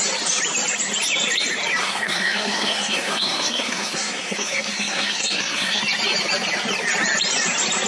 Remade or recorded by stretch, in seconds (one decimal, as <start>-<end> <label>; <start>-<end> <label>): 0.0-1.8 recorded; 1.8-5.8 remade; 5.8-7.9 recorded